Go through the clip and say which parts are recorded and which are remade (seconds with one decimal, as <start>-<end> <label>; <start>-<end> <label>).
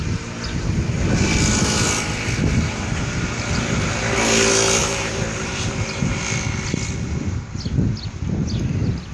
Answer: 0.0-4.8 recorded; 4.8-6.2 remade; 6.2-9.1 recorded